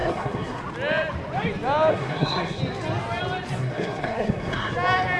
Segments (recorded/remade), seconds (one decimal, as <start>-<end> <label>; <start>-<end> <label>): 0.0-0.6 remade; 0.6-1.9 recorded; 1.9-2.6 remade; 2.6-3.6 recorded; 3.6-4.7 remade; 4.7-5.2 recorded

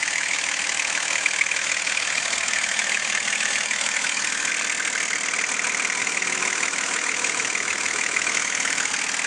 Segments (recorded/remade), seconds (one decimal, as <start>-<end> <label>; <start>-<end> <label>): 0.0-4.5 remade; 4.5-6.0 recorded; 6.0-8.9 remade; 8.9-9.3 recorded

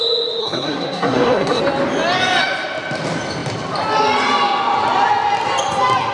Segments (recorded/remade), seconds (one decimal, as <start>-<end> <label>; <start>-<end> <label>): 0.0-0.4 recorded; 0.4-1.6 remade; 1.6-6.1 recorded

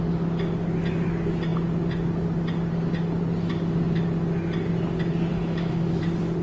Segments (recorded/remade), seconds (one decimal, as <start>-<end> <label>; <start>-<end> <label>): 0.0-5.3 recorded; 5.3-6.0 remade; 6.0-6.4 recorded